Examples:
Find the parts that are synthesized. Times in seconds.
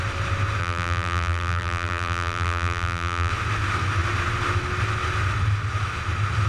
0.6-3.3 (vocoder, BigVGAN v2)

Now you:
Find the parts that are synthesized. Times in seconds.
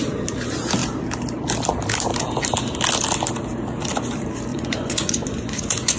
4.5-6.0 (vocoder, Vocos)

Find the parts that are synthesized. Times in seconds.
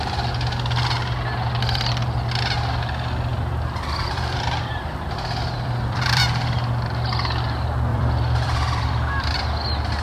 3.3-6.2 (vocoder, BigVGAN v2); 7.9-9.4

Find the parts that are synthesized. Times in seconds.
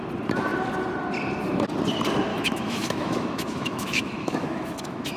2.3-5.2 (autoencoder, DAC-VAE)